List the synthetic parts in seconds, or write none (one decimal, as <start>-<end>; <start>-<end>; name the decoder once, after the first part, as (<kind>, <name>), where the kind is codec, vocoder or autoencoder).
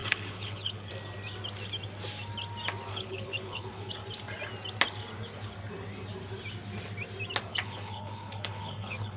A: 0.0-0.9 (codec, HILCodec); 2.9-3.9; 7.5-9.2